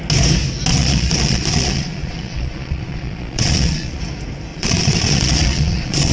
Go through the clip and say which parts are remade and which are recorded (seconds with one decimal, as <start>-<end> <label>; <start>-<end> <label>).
0.0-0.7 recorded; 0.7-4.0 remade; 4.0-4.5 recorded; 4.5-6.1 remade